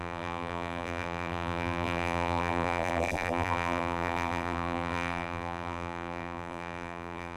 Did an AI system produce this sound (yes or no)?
yes